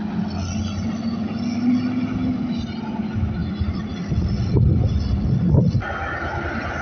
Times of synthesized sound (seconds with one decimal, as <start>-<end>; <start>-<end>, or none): none